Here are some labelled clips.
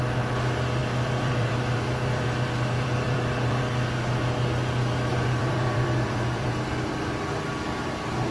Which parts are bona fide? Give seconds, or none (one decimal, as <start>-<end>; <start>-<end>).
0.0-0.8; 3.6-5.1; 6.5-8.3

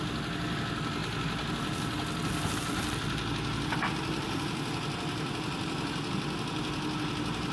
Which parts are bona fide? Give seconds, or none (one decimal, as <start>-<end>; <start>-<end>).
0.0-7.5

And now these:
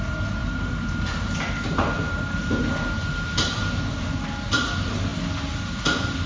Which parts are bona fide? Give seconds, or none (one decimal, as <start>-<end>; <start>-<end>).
0.0-0.4; 3.8-6.3

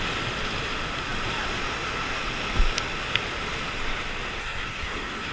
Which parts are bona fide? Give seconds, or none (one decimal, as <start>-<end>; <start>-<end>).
0.0-4.4

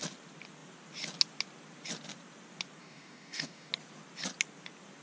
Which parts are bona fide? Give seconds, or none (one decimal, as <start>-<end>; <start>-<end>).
0.0-2.8; 3.7-5.0